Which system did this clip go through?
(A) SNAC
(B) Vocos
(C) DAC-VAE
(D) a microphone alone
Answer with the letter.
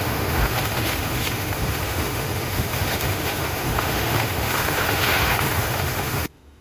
C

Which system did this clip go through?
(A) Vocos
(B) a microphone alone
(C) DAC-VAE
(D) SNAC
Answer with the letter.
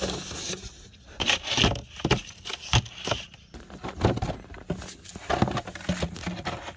B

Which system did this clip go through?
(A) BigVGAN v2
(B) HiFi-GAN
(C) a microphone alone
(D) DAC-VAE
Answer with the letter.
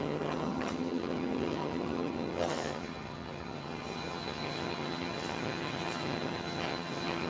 B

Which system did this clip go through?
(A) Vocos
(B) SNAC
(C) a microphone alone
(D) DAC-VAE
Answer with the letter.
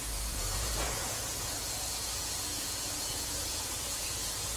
A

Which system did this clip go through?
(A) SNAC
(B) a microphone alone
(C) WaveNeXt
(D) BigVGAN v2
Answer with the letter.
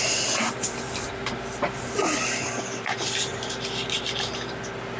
B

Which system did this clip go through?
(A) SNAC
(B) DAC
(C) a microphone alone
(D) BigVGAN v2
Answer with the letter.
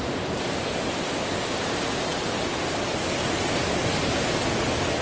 C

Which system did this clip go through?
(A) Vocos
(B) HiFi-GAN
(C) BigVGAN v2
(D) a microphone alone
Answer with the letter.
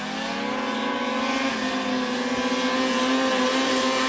D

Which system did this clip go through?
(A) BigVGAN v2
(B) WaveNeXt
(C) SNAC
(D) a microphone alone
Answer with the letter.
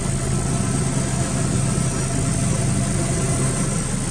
D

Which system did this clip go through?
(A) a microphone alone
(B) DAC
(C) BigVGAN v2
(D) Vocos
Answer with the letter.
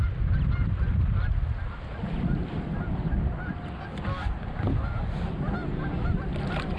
A